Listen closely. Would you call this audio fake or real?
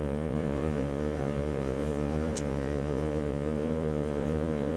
fake